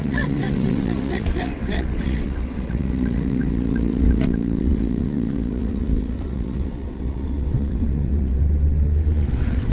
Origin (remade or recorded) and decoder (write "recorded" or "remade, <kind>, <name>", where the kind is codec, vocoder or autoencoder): remade, vocoder, WaveNeXt